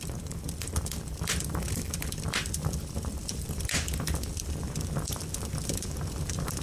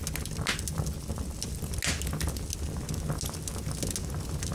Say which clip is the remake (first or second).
first